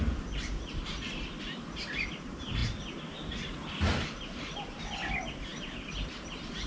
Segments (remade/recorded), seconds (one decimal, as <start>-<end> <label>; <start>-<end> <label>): 0.0-6.7 recorded